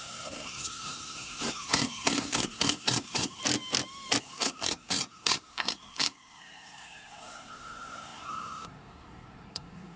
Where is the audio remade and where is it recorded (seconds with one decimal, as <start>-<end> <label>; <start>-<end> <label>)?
0.0-3.4 remade; 3.4-4.2 recorded; 4.2-10.0 remade